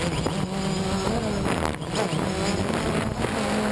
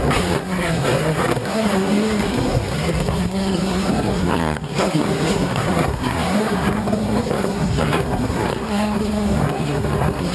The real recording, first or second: first